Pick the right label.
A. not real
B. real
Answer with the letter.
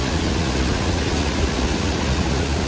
A